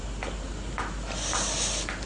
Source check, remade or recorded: recorded